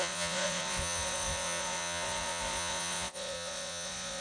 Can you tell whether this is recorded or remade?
remade